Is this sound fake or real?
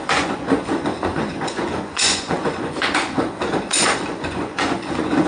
fake